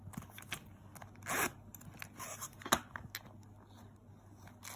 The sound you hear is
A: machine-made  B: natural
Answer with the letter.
B